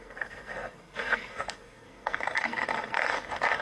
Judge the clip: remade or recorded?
remade